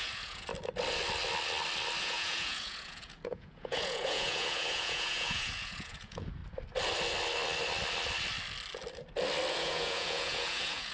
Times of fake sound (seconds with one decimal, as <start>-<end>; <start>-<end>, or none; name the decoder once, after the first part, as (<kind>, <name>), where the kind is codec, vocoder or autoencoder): 0.0-0.5 (vocoder, Vocos); 2.0-6.4; 9.5-10.9